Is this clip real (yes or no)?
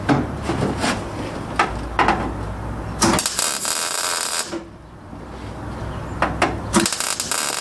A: yes